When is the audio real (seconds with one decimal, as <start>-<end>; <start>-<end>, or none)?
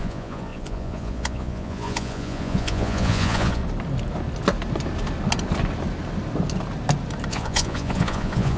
3.6-7.3